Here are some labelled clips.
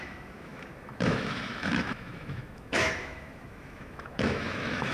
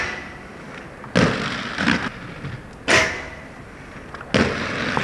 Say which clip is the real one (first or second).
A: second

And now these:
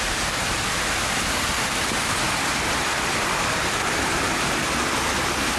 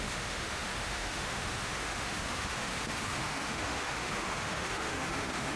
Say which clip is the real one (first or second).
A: first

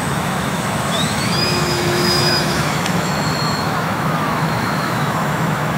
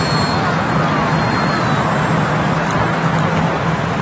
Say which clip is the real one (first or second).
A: second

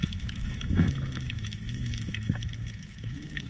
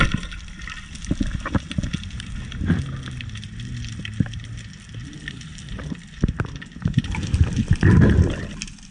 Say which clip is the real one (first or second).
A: second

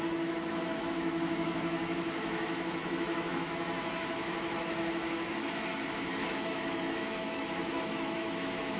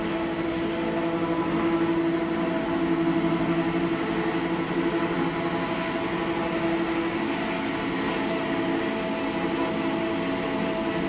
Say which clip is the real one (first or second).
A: second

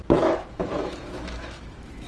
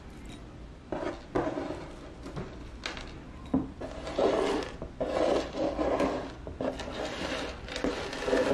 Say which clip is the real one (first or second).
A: second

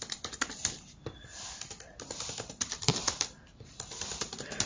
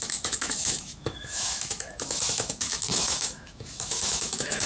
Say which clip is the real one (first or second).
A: first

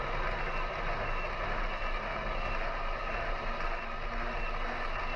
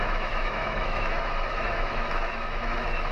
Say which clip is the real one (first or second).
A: first